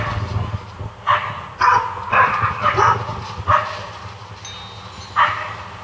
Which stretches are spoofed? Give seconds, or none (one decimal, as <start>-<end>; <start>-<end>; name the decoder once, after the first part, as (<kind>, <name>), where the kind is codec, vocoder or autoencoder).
none